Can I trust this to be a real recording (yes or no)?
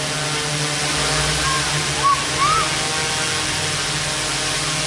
yes